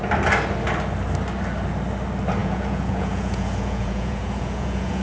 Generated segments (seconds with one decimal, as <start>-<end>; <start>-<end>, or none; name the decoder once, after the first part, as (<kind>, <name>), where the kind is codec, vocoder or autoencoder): 2.4-5.0 (vocoder, Vocos)